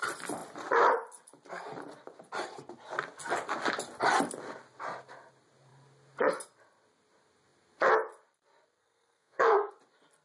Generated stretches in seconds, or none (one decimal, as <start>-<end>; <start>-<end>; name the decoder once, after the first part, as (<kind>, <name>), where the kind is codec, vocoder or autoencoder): 8.8-9.7 (codec, SNAC)